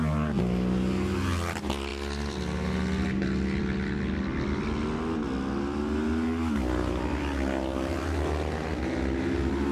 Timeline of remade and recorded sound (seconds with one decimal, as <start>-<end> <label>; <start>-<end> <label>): 0.0-9.7 recorded